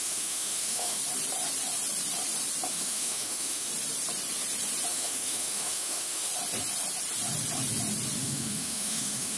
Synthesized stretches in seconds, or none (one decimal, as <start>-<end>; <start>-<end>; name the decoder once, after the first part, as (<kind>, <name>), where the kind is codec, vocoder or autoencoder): 0.0-1.0 (autoencoder, DAC-VAE); 2.7-3.7; 4.9-6.3; 8.2-9.4